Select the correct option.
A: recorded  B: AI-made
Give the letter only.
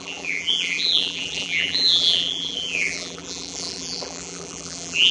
B